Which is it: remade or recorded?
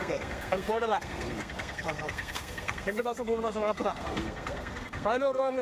remade